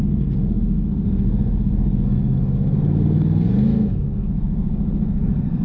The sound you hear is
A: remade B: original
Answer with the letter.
A